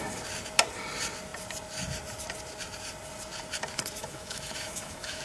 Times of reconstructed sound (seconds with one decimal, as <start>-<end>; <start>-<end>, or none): 4.0-5.2